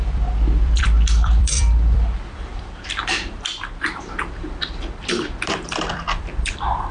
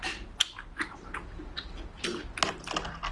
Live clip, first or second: second